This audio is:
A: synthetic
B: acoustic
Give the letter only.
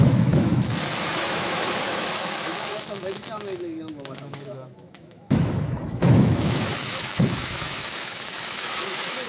A